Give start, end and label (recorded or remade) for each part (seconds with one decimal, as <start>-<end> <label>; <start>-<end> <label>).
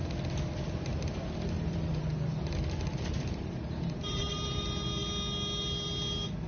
0.0-0.9 recorded; 0.9-4.6 remade; 4.6-6.5 recorded